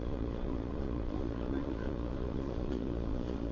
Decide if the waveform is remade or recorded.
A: remade